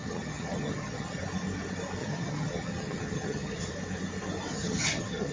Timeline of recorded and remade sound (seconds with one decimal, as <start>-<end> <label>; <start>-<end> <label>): 0.0-1.2 remade; 1.2-2.0 recorded; 2.0-3.7 remade; 3.7-4.5 recorded; 4.5-5.3 remade